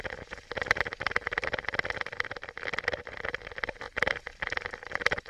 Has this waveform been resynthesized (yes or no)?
no